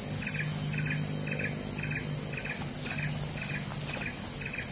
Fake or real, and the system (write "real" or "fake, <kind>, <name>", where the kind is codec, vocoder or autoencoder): real